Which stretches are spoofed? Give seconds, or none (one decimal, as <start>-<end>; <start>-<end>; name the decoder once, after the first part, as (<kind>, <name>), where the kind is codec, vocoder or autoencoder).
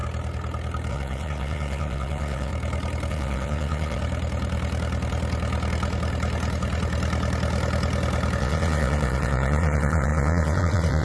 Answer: 0.9-2.5 (vocoder, Vocos); 3.1-4.0; 8.4-11.0